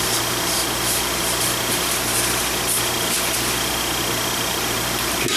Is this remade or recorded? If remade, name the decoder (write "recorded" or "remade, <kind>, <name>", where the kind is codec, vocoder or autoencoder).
recorded